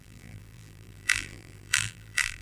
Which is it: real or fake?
fake